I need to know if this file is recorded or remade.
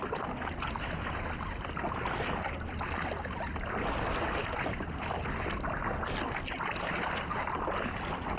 recorded